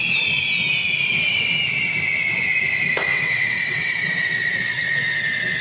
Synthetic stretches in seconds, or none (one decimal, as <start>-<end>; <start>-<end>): 3.1-5.6